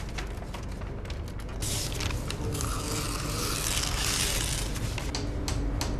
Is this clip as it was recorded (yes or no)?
yes